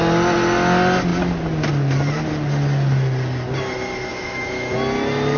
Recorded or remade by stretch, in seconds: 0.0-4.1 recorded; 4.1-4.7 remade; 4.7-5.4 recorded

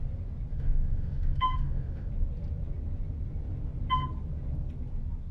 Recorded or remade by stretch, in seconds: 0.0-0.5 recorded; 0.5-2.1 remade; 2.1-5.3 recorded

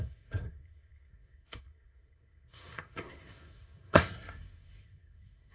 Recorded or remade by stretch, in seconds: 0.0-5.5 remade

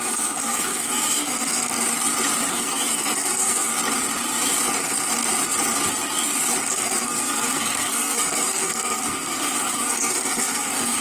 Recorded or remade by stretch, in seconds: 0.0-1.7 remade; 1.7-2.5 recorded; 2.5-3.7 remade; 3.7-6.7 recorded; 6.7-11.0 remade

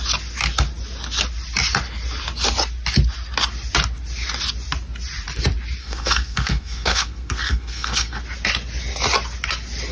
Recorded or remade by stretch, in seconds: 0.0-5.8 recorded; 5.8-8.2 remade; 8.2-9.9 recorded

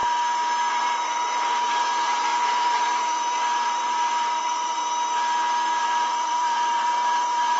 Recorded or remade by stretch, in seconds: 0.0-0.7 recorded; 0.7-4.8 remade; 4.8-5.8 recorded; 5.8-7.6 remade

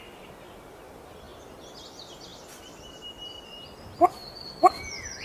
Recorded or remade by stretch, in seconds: 0.0-5.2 recorded